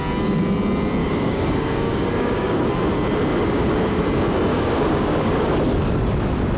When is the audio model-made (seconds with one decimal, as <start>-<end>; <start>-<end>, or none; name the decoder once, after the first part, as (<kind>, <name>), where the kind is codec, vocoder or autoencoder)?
1.0-2.6 (codec, DAC); 3.3-4.0; 4.5-5.5